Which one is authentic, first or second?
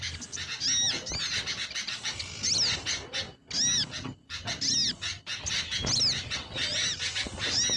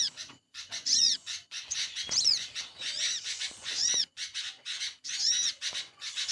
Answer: first